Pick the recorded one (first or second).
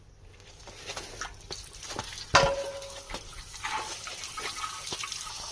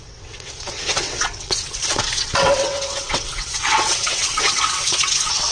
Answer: first